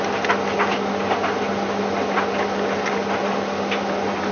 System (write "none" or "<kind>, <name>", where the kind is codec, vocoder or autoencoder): none